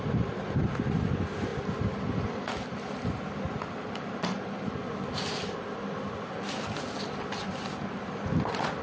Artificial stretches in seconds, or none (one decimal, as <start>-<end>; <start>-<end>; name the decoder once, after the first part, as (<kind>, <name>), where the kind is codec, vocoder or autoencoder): none